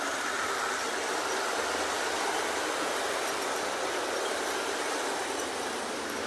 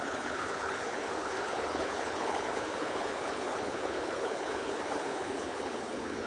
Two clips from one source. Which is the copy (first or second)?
second